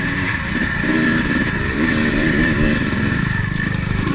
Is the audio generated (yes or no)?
yes